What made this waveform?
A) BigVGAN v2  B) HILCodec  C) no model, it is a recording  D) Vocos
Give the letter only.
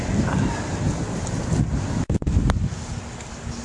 C